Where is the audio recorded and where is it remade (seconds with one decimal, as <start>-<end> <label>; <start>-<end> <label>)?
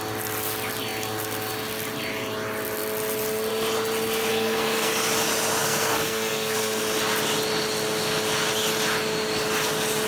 0.0-4.3 recorded; 4.3-4.9 remade; 4.9-5.6 recorded; 5.6-6.8 remade; 6.8-10.1 recorded